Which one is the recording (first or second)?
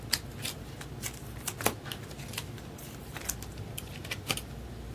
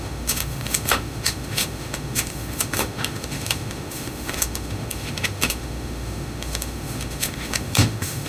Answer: first